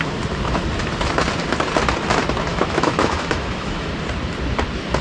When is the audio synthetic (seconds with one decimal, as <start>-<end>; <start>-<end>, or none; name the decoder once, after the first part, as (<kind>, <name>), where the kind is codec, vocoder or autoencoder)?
2.5-3.9 (autoencoder, DAC-VAE)